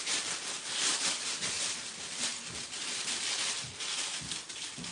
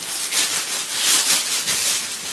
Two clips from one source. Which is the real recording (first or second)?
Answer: second